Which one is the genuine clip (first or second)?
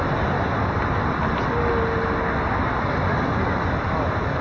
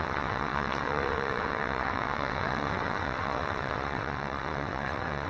first